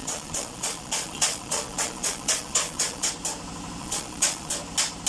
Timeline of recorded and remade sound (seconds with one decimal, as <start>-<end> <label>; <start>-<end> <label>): 0.0-3.1 remade; 3.1-3.8 recorded; 3.8-4.5 remade; 4.5-5.1 recorded